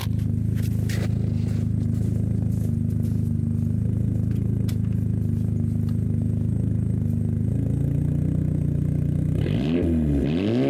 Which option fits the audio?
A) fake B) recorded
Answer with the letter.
B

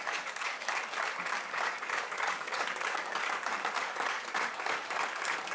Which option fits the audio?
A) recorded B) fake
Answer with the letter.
B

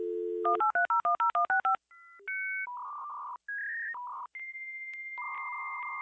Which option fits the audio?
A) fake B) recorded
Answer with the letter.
B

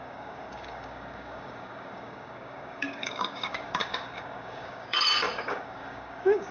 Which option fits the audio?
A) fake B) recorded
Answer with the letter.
A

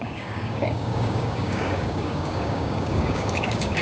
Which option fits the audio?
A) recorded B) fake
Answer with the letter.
B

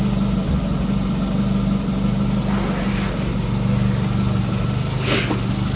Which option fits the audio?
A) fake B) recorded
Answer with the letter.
B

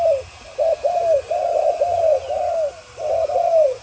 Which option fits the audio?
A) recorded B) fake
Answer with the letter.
A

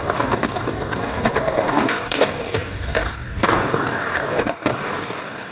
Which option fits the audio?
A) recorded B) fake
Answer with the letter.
B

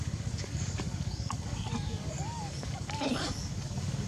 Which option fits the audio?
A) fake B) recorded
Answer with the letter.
A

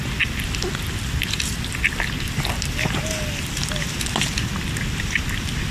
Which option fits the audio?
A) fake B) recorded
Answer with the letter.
B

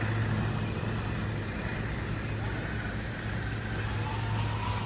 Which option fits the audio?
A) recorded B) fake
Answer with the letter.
A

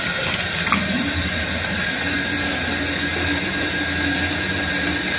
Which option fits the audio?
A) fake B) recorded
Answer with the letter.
B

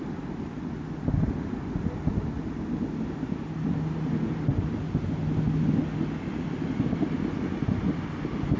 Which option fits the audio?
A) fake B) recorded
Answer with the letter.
B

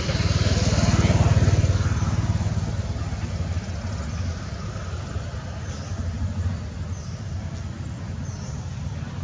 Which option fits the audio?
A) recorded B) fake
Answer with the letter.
A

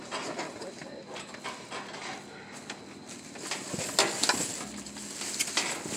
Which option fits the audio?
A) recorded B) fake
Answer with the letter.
A